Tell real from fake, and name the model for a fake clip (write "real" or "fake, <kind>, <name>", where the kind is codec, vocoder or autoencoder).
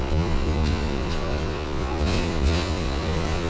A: fake, vocoder, Vocos